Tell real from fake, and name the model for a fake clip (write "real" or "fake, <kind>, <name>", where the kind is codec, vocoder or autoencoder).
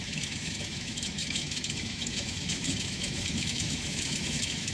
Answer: fake, autoencoder, DAC-VAE